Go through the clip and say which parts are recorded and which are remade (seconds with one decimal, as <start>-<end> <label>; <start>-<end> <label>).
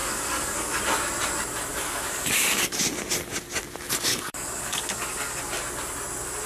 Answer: 0.0-0.8 remade; 0.8-1.7 recorded; 1.7-2.8 remade; 2.8-4.1 recorded; 4.1-5.4 remade; 5.4-6.5 recorded